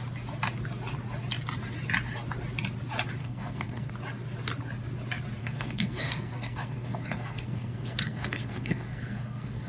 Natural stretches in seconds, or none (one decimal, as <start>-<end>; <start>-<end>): 0.0-3.2; 3.9-5.4